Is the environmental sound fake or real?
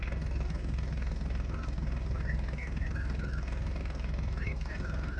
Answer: fake